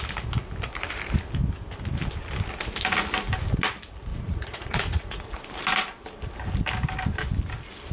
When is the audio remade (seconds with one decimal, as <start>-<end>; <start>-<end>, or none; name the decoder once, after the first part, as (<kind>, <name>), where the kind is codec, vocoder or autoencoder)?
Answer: 4.1-5.3 (vocoder, Vocos)